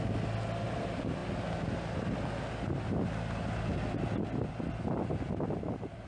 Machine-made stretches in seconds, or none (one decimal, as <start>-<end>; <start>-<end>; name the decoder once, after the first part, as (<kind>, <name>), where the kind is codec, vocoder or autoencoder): none